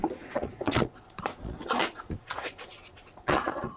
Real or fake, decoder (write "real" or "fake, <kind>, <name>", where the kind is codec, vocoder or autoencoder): fake, vocoder, Vocos